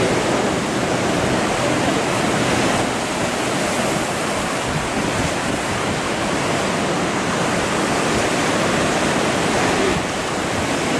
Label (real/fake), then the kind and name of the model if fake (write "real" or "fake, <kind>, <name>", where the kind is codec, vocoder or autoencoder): real